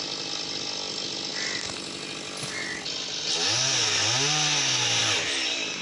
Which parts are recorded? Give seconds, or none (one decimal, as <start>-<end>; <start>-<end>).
0.0-5.8